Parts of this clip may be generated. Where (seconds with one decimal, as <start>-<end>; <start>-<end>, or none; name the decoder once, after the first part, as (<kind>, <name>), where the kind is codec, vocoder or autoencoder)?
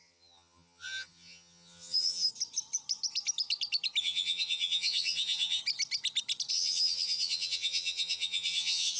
0.0-2.3 (vocoder, HiFi-GAN); 4.0-5.6; 6.5-9.0